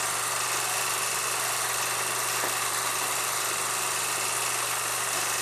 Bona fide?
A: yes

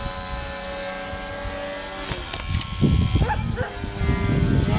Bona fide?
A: yes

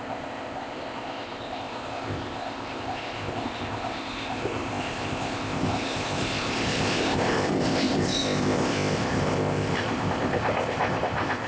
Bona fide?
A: no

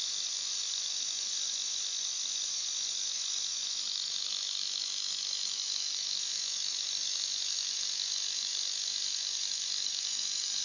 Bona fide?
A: no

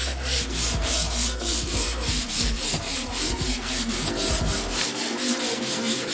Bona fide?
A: no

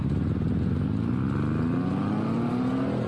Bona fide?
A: yes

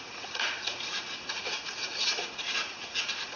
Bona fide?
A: no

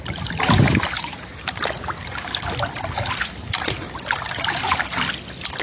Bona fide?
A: yes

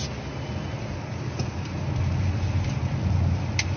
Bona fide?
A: yes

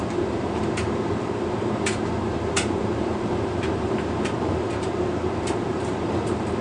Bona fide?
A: no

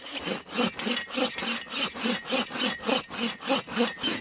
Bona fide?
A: no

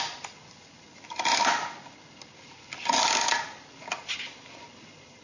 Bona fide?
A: yes